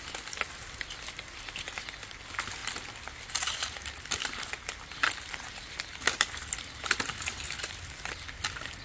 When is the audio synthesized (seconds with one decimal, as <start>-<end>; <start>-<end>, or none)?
none